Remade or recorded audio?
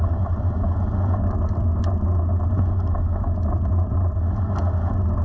recorded